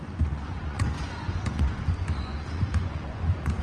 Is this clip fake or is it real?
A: fake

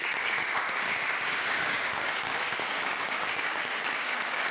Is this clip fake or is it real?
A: fake